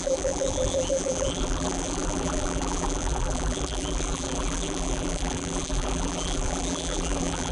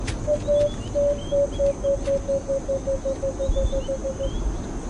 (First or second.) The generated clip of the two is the first